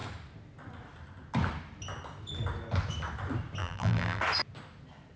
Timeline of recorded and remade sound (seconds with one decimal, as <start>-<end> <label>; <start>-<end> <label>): 0.0-3.6 recorded; 3.6-4.2 remade; 4.2-5.2 recorded